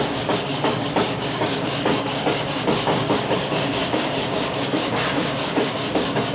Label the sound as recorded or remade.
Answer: remade